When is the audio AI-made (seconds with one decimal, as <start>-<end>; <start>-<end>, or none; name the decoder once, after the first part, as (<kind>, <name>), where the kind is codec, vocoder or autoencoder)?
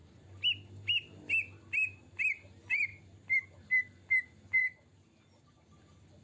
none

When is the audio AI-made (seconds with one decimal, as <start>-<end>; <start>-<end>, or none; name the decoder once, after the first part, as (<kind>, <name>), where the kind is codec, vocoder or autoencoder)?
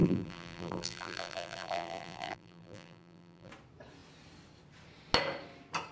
0.0-3.5 (vocoder, BigVGAN v2)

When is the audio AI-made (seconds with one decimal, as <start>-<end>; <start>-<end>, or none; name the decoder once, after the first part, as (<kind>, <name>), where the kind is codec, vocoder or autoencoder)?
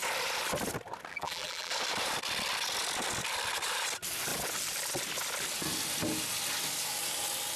1.1-1.7 (vocoder, BigVGAN v2)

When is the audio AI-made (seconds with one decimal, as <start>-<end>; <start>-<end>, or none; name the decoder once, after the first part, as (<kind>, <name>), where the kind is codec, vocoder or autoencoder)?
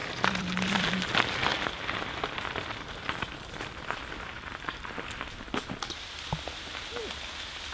0.0-0.9 (vocoder, BigVGAN v2); 1.5-5.3